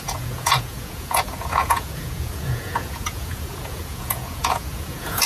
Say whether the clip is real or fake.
fake